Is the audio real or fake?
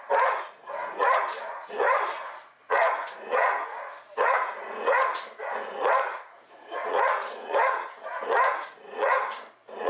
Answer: fake